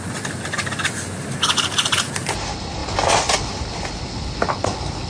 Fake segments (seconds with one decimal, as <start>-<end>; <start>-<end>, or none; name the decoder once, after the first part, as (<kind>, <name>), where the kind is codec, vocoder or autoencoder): none